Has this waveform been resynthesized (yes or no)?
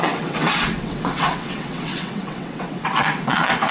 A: yes